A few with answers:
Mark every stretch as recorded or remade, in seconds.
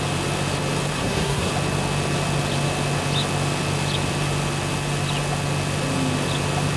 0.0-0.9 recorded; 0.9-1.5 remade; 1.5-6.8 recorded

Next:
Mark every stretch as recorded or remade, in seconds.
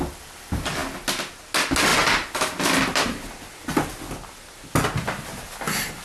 0.0-6.0 recorded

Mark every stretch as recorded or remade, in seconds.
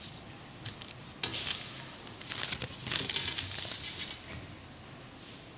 0.0-5.6 recorded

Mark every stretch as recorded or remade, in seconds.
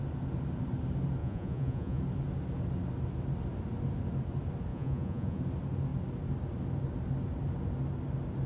0.0-1.2 recorded; 1.2-2.0 remade; 2.0-4.7 recorded; 4.7-5.4 remade; 5.4-8.5 recorded